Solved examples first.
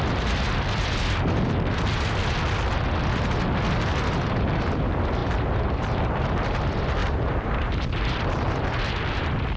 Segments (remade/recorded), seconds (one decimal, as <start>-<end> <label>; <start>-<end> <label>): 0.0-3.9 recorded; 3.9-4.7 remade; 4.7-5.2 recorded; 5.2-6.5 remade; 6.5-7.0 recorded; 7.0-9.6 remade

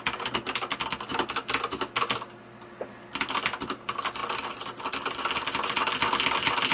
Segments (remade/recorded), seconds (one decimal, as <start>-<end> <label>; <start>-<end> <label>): 0.0-6.7 recorded

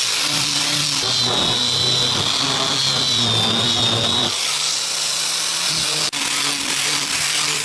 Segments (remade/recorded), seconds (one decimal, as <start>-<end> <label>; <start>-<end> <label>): 0.0-7.6 recorded

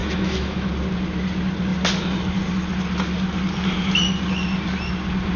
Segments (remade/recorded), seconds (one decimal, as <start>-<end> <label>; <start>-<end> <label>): 0.0-0.7 remade; 0.7-5.4 recorded

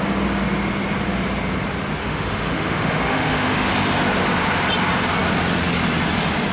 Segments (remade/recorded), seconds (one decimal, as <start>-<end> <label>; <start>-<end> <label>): 0.0-2.0 recorded; 2.0-3.7 remade; 3.7-6.5 recorded